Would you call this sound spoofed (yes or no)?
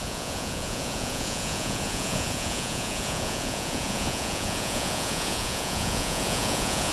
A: yes